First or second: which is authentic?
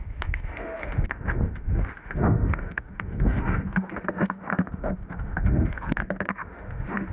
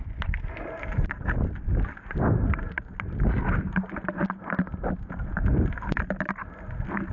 second